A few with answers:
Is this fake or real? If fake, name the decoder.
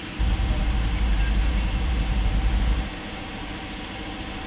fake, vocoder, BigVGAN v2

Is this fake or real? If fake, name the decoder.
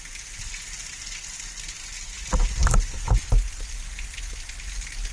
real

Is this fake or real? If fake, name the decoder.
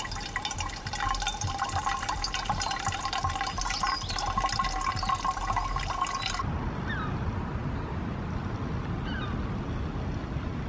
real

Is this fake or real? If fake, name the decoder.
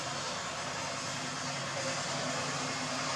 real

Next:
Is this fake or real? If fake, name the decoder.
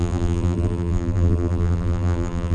fake, vocoder, BigVGAN v2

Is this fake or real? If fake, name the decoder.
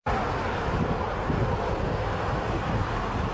real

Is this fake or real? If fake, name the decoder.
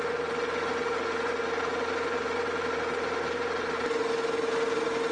real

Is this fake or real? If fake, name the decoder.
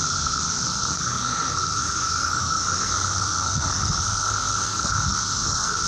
fake, codec, SNAC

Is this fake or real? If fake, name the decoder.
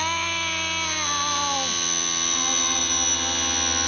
real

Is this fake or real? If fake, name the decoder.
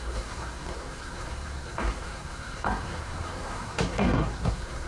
fake, codec, SNAC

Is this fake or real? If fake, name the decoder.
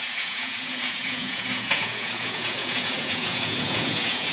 fake, vocoder, Vocos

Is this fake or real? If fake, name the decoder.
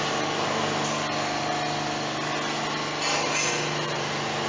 real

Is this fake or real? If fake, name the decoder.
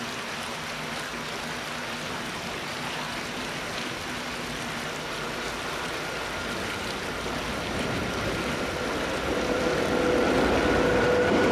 real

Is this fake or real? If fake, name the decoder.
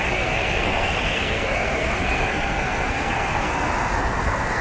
fake, codec, SNAC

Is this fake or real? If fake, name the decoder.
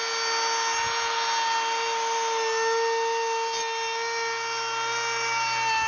real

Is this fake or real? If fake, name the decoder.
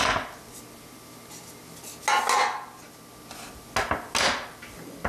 real